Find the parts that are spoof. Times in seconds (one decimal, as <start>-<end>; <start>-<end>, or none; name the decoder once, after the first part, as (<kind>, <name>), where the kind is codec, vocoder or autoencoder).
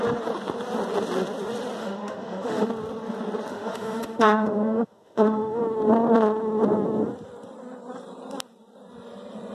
1.8-2.7 (autoencoder, DAC-VAE); 3.5-5.6